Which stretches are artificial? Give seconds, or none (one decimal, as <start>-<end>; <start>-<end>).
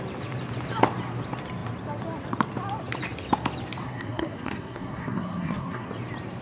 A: 3.8-5.9